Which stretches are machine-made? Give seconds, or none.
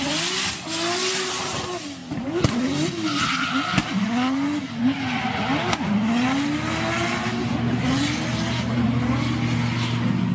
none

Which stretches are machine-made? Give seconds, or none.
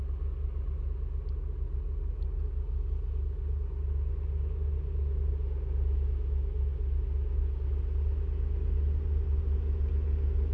none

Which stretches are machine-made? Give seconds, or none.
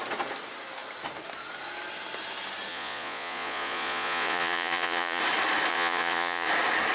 2.7-5.2 (vocoder, Vocos); 5.7-6.5